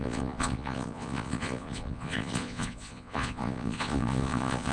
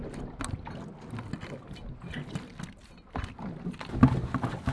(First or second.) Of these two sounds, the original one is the second